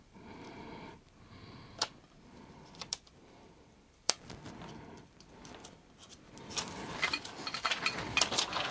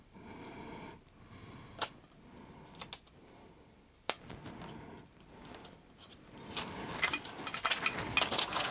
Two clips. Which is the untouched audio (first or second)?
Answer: second